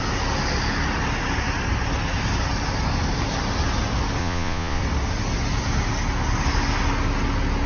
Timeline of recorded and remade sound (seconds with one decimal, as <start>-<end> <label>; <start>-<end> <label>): 0.0-4.2 recorded; 4.2-4.8 remade; 4.8-7.7 recorded